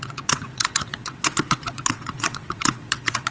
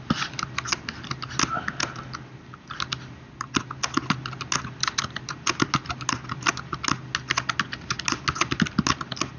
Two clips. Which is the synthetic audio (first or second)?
first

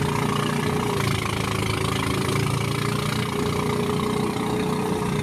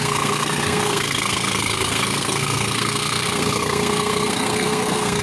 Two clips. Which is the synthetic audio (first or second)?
second